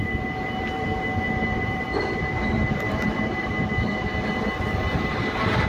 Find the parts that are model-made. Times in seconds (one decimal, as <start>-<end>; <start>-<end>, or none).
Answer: 0.0-5.7